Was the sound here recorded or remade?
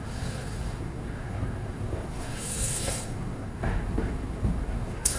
remade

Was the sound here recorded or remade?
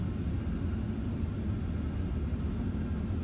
recorded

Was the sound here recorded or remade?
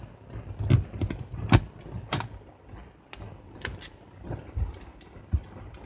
recorded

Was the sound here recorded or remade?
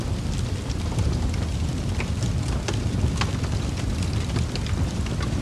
recorded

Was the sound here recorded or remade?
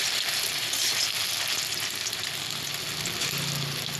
recorded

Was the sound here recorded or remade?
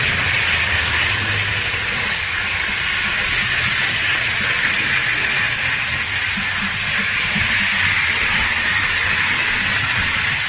recorded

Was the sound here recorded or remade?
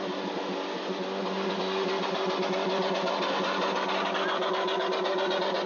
recorded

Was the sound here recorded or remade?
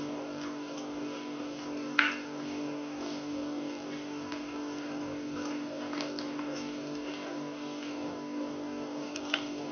remade